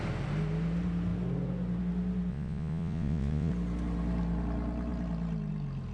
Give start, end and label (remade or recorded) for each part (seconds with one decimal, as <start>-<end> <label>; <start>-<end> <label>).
0.0-2.3 recorded; 2.3-3.5 remade; 3.5-5.9 recorded